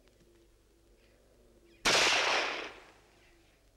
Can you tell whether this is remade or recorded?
recorded